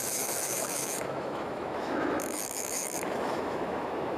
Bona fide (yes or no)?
no